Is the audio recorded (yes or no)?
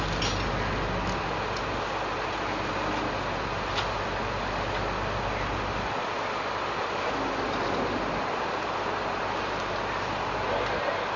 yes